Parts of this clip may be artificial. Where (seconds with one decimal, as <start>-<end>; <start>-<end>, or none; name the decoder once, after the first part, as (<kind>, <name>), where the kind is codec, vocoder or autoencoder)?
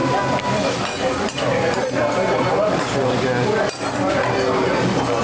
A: none